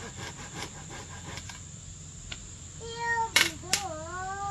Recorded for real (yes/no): yes